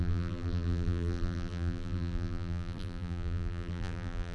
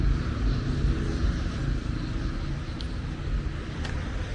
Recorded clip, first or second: second